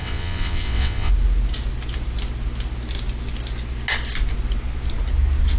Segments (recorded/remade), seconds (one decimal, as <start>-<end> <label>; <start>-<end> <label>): 0.0-1.1 remade; 1.1-5.6 recorded